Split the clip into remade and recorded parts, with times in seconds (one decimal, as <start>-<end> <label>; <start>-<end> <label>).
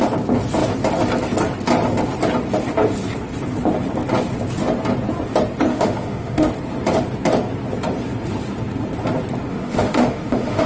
0.0-5.7 recorded; 5.7-6.5 remade; 6.5-9.5 recorded; 9.5-10.7 remade